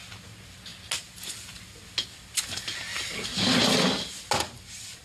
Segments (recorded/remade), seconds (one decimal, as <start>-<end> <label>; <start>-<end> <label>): 0.0-5.0 recorded

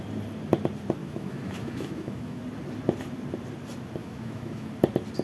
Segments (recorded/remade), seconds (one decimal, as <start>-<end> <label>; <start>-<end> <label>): 0.0-1.0 recorded; 1.0-2.4 remade; 2.4-4.0 recorded; 4.0-4.7 remade; 4.7-5.2 recorded

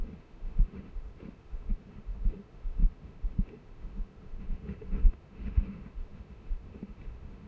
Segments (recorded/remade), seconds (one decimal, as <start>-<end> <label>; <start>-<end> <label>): 0.0-7.5 remade

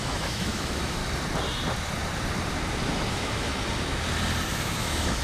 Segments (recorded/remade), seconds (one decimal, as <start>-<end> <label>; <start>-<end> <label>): 0.0-1.0 remade; 1.0-3.1 recorded; 3.1-3.5 remade; 3.5-4.5 recorded; 4.5-5.2 remade

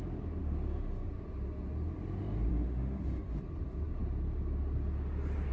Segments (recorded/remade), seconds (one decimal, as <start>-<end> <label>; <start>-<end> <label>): 0.0-0.4 recorded; 0.4-1.1 remade; 1.1-2.5 recorded; 2.5-3.4 remade; 3.4-5.5 recorded

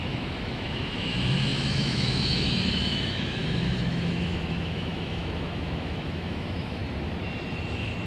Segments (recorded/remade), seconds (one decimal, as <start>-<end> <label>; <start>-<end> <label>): 0.0-6.8 remade; 6.8-8.1 recorded

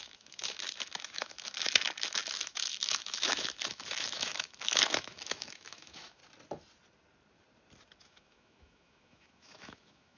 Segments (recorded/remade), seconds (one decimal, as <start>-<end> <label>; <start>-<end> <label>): 0.0-6.2 remade; 6.2-8.0 recorded; 8.0-10.2 remade

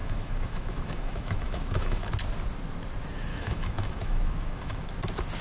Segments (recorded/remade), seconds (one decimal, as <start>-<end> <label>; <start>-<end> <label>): 0.0-2.1 remade; 2.1-3.3 recorded; 3.3-4.9 remade; 4.9-5.4 recorded